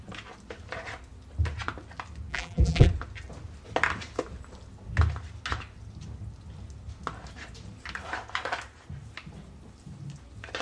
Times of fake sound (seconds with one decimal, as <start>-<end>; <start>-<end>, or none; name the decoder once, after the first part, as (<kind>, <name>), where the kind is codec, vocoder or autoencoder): 2.3-2.9 (vocoder, BigVGAN v2)